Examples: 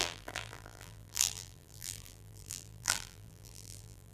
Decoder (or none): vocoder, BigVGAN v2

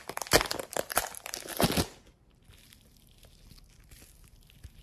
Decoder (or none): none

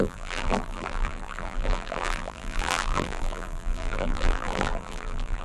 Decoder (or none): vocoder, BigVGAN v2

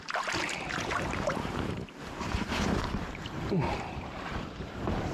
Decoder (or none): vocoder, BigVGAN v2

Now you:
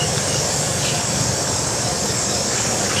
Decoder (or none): codec, DAC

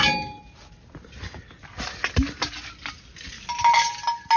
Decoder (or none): none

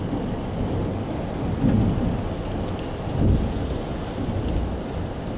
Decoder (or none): none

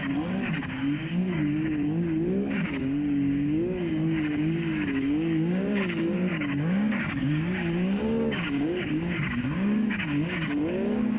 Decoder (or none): codec, DAC